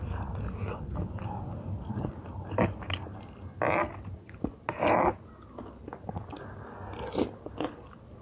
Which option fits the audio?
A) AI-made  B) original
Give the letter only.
B